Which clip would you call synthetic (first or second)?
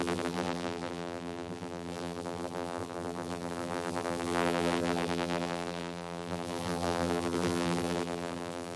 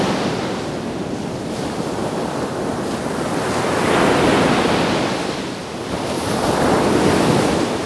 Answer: first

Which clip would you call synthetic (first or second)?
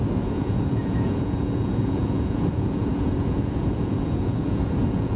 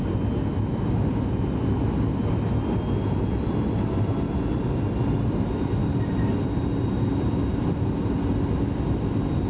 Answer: first